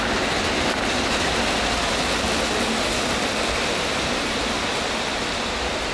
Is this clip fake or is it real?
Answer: real